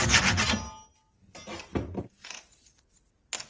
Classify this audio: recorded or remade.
recorded